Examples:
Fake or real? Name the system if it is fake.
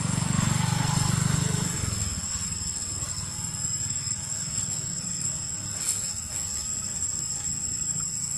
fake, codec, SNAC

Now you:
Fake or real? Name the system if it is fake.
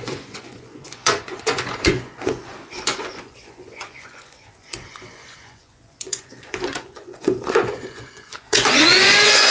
fake, vocoder, Vocos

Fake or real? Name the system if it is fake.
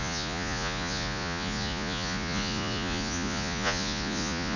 fake, vocoder, Vocos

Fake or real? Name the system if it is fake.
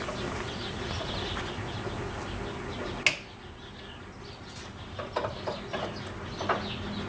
real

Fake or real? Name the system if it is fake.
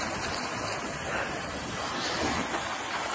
real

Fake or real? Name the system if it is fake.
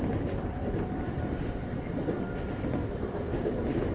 fake, vocoder, BigVGAN v2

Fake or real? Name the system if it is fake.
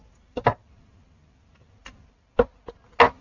real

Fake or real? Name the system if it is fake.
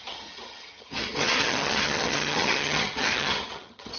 fake, vocoder, HiFi-GAN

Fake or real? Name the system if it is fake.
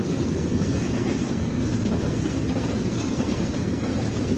fake, codec, SNAC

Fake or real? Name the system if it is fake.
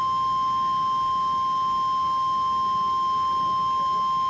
real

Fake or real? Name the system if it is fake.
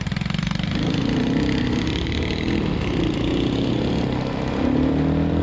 fake, vocoder, BigVGAN v2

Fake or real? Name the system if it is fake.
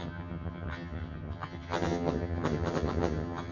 fake, vocoder, HiFi-GAN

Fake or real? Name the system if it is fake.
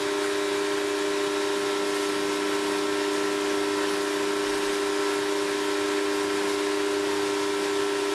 real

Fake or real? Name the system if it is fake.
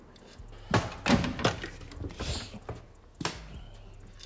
real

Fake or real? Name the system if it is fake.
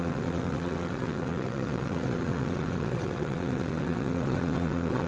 fake, vocoder, WaveNeXt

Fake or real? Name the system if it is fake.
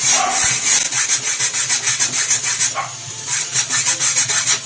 real